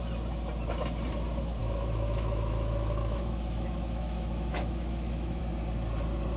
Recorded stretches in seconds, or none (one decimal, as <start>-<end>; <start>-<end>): 0.0-1.6; 5.4-6.4